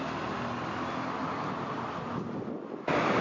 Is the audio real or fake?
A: real